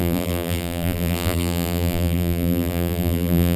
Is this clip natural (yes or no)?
no